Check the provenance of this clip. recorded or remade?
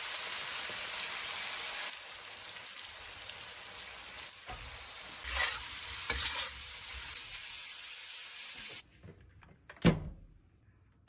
recorded